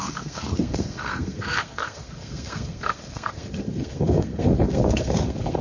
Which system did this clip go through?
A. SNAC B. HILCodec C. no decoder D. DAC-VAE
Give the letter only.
A